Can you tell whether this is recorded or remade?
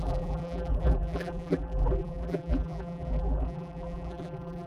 remade